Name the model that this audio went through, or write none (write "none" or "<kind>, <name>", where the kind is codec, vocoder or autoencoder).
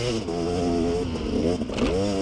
none